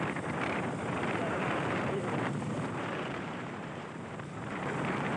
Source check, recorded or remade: remade